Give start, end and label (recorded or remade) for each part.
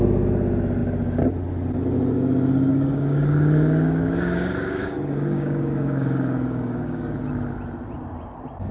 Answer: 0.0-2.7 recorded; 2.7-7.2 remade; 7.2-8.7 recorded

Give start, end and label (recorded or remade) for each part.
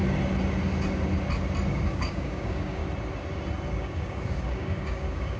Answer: 0.0-1.7 recorded; 1.7-2.8 remade; 2.8-3.7 recorded; 3.7-5.4 remade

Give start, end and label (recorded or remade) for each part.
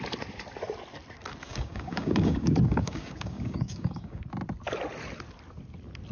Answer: 0.0-1.5 recorded; 1.5-4.2 remade; 4.2-6.1 recorded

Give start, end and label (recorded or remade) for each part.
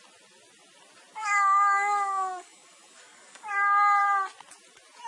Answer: 0.0-1.2 recorded; 1.2-3.5 remade; 3.5-5.1 recorded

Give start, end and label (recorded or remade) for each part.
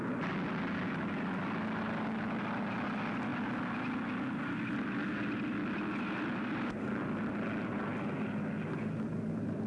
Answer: 0.0-9.7 recorded